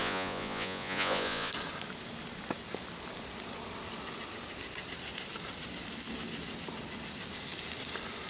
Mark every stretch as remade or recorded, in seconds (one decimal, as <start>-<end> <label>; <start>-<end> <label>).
0.0-1.5 remade; 1.5-8.3 recorded